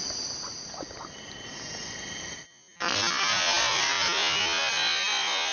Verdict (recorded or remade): recorded